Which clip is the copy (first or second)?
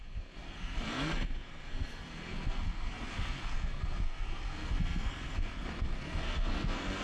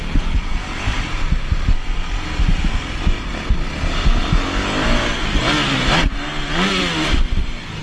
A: first